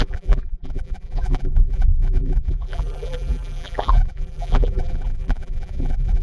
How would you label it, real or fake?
fake